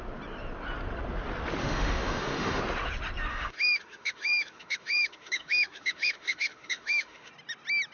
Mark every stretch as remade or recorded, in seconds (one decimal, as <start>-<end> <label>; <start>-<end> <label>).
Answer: 0.0-1.6 recorded; 1.6-2.6 remade; 2.6-3.3 recorded; 3.3-7.3 remade; 7.3-7.9 recorded